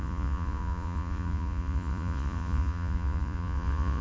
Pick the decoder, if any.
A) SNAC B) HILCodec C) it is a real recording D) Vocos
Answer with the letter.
D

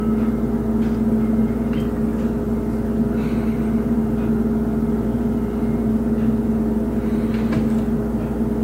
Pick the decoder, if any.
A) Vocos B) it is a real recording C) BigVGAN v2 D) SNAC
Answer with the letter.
B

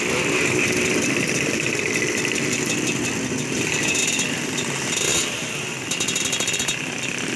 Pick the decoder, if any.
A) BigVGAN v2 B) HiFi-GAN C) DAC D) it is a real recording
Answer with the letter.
A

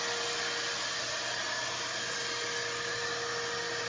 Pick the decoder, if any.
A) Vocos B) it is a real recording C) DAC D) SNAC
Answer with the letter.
B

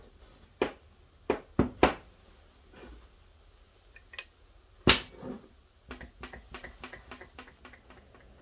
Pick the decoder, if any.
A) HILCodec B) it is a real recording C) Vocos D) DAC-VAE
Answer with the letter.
B